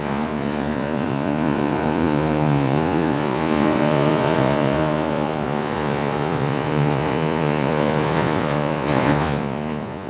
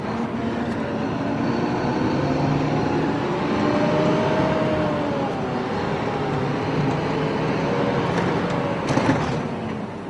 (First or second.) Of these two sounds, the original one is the second